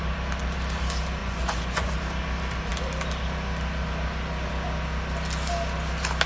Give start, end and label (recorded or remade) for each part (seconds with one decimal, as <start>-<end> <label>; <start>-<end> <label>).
0.0-1.2 recorded; 1.2-1.9 remade; 1.9-6.3 recorded